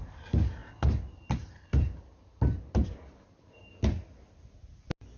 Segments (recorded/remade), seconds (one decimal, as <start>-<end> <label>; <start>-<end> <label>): 0.0-5.2 recorded